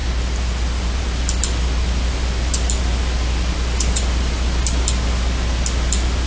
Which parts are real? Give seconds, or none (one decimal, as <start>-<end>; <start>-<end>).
0.0-6.3